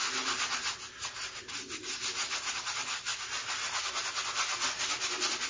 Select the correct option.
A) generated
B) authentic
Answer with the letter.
B